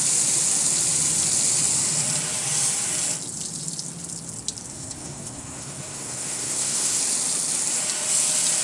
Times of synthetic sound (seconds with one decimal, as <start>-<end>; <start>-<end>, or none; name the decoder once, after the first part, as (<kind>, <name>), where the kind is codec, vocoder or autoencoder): 4.7-7.0 (codec, SNAC)